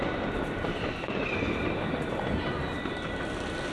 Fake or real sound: real